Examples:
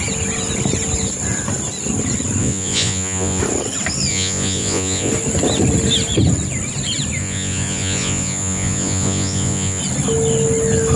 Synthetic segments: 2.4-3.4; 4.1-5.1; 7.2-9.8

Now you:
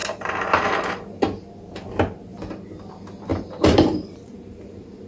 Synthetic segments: 0.0-0.7; 3.3-5.1

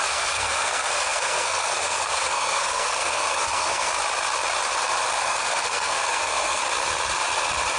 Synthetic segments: 0.0-3.9; 5.2-6.6